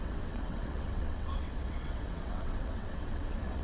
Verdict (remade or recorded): remade